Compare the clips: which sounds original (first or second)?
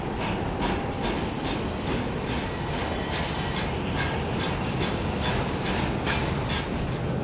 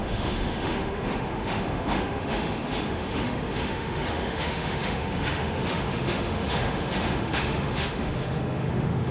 first